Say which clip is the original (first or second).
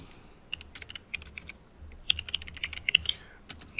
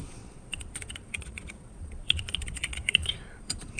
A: first